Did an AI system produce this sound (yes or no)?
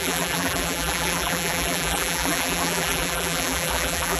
yes